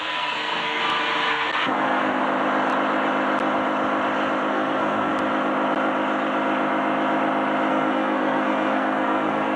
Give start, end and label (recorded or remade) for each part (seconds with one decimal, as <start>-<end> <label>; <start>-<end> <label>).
0.0-0.8 remade; 0.8-1.3 recorded; 1.3-2.2 remade; 2.2-4.5 recorded; 4.5-5.1 remade; 5.1-7.7 recorded; 7.7-9.6 remade